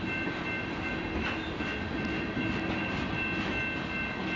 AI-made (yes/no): no